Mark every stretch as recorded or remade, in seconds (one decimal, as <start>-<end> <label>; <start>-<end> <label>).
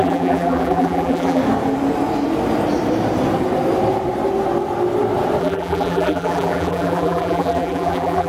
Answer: 0.0-1.4 remade; 1.4-5.4 recorded; 5.4-8.3 remade